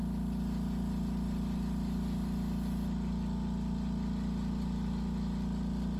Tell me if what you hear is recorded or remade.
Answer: recorded